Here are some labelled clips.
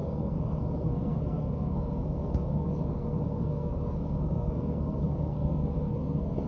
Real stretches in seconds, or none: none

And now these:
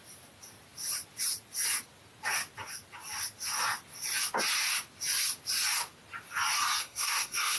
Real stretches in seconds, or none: 0.0-6.8

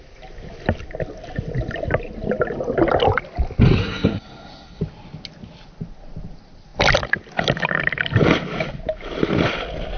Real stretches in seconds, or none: 0.0-3.8; 4.8-10.0

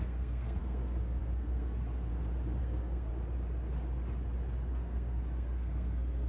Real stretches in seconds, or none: 2.1-2.6; 3.1-4.7

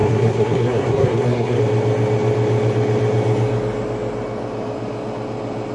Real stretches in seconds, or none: 1.6-5.7